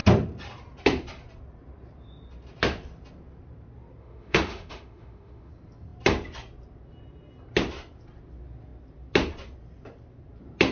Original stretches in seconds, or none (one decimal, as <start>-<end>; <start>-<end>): 0.0-4.0; 5.5-10.7